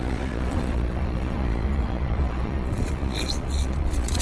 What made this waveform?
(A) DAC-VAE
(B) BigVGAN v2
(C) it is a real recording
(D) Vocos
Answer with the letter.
D